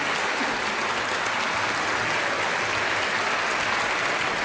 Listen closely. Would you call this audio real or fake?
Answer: real